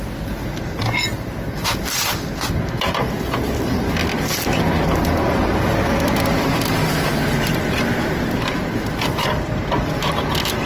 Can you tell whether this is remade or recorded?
recorded